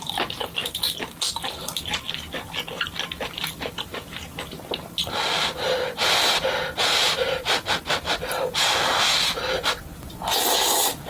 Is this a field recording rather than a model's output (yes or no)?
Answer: yes